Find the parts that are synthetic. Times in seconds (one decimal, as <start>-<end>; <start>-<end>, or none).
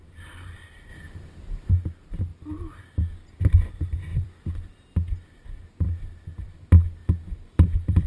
4.1-4.7; 7.0-8.1